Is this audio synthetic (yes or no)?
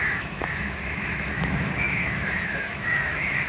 yes